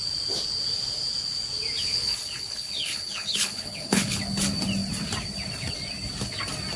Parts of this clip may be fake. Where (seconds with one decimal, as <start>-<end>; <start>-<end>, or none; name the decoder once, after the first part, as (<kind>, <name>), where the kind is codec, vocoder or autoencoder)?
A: 1.8-4.2 (codec, HILCodec)

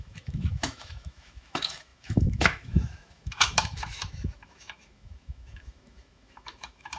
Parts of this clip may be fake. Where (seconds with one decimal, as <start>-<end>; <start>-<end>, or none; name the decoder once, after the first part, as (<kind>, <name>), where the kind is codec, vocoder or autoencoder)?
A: 0.0-7.0 (autoencoder, DAC-VAE)

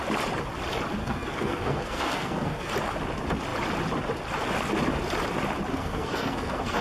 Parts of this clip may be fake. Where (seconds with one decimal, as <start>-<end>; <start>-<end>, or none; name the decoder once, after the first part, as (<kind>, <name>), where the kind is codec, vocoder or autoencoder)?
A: 1.0-2.7 (codec, SNAC); 5.7-6.8

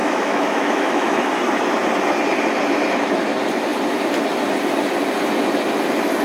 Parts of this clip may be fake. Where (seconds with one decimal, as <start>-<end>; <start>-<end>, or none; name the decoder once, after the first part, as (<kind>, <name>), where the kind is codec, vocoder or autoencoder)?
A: 0.0-1.3 (autoencoder, DAC-VAE)

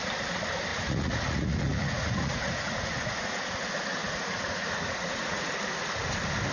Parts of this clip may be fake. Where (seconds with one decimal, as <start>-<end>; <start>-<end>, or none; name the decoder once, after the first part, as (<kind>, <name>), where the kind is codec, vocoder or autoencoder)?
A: 0.7-3.4 (vocoder, Vocos); 4.0-5.5